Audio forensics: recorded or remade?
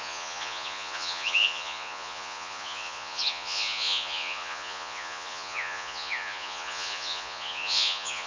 remade